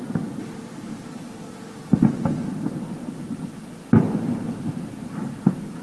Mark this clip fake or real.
real